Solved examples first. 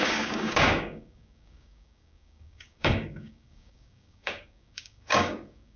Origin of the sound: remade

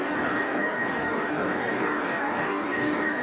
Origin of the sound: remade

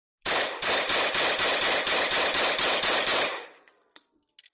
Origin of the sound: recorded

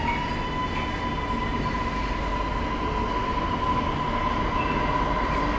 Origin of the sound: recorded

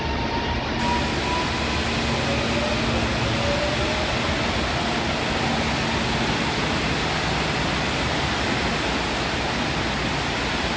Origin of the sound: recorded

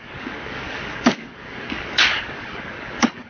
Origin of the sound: remade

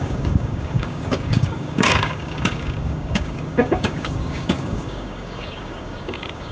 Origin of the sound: remade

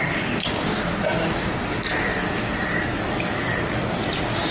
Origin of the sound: recorded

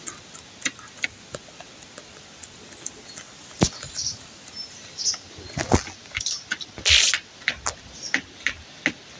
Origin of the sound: recorded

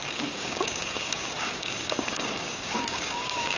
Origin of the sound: remade